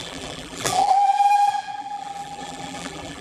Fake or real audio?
fake